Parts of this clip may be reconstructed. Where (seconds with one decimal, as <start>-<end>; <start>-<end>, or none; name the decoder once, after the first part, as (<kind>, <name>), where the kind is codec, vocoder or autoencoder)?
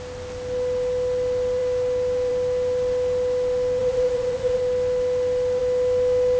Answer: 3.8-4.6 (vocoder, Vocos)